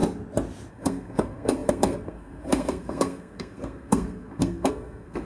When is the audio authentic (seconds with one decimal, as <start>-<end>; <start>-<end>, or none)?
0.0-0.7